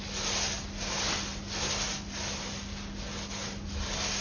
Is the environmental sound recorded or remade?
recorded